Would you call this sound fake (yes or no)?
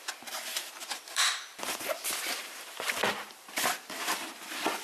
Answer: yes